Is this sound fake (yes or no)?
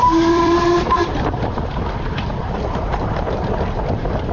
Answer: yes